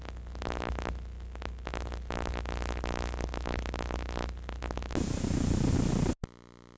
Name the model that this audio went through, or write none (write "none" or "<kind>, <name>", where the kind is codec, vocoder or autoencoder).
none